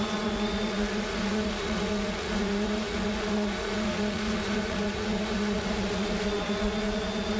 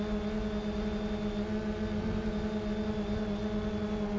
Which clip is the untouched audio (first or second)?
second